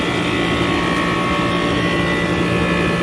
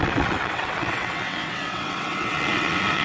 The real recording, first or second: first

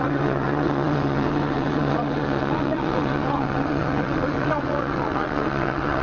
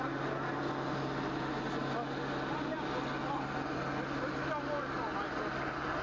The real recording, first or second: second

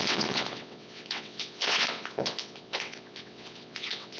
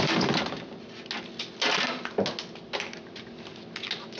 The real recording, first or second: second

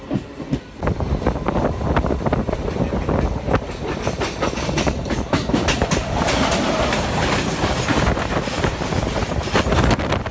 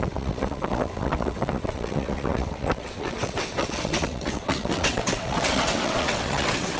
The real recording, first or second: first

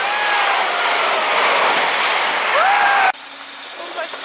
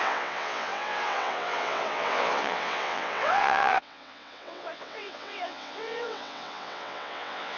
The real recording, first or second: first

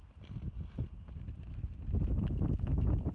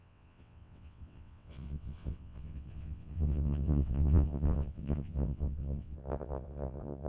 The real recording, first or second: first